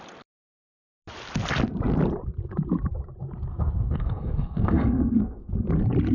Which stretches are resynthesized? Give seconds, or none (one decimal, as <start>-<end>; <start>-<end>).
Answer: 3.5-5.5